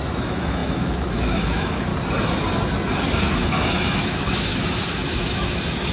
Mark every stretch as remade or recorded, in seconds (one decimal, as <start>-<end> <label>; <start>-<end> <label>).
0.0-1.9 remade; 1.9-3.2 recorded; 3.2-5.9 remade